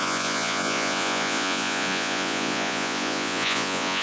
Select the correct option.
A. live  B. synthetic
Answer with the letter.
B